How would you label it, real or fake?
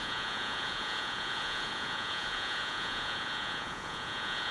fake